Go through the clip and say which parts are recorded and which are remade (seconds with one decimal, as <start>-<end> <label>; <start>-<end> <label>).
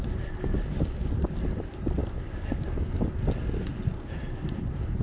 0.0-2.0 recorded; 2.0-2.7 remade; 2.7-5.0 recorded